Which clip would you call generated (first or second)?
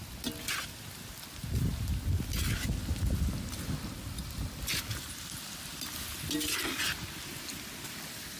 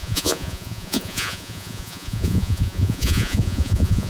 second